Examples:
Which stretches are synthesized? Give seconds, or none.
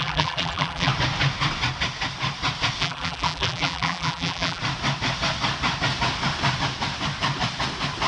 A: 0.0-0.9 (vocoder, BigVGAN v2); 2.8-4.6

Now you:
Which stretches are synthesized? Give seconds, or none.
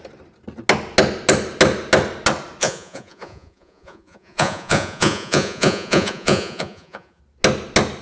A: 2.6-7.2 (vocoder, Vocos)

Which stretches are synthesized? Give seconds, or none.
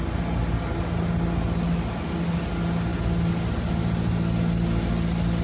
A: none